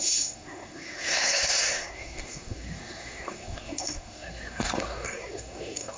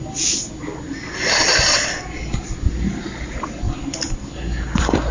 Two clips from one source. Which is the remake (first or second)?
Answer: first